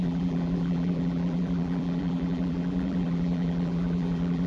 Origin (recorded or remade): remade